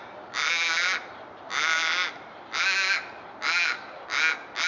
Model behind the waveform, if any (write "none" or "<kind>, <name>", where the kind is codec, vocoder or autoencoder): none